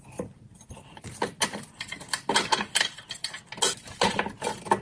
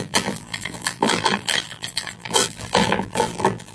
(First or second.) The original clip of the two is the first